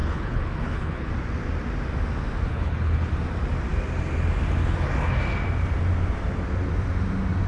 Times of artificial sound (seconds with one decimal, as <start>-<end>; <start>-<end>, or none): 0.0-1.1; 2.5-3.1